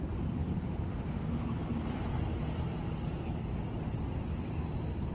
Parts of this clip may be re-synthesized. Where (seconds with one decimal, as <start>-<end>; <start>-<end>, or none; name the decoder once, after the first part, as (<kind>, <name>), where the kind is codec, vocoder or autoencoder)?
none